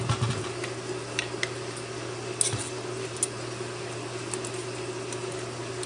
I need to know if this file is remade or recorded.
recorded